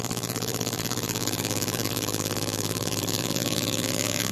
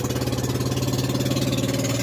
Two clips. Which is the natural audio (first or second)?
second